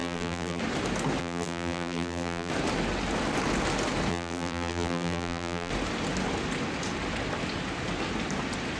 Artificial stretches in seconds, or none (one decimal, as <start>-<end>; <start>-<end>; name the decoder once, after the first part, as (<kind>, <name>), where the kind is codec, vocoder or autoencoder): 0.0-0.6 (vocoder, BigVGAN v2); 1.2-2.5; 4.1-5.7